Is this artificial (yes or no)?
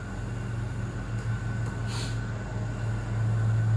no